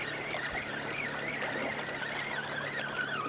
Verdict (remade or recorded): recorded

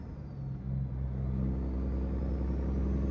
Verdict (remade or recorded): recorded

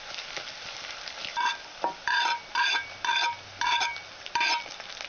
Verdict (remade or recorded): recorded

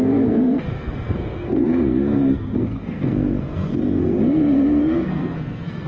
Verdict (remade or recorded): remade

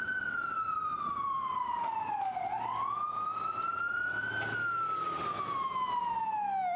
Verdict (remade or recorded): recorded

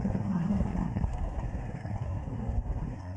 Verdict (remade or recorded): remade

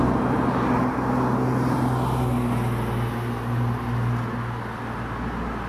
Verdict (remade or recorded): recorded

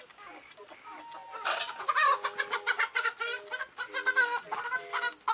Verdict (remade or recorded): recorded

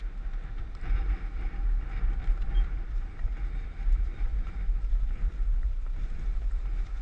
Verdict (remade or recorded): remade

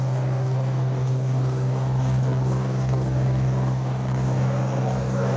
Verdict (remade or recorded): remade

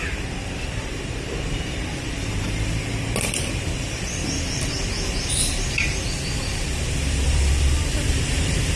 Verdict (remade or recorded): remade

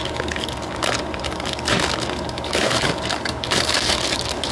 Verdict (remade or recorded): remade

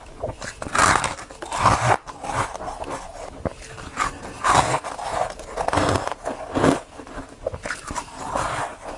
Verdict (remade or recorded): recorded